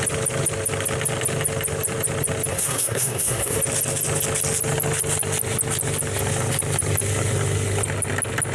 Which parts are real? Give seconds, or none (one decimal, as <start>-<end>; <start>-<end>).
0.0-2.5; 3.6-8.5